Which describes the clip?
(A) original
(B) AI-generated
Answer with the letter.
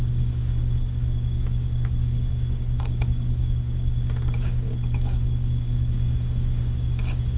B